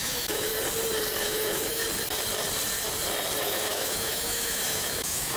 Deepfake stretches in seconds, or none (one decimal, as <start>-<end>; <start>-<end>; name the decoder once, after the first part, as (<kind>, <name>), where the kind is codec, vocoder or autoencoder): 0.0-0.5 (autoencoder, DAC-VAE); 1.2-1.8; 3.4-5.4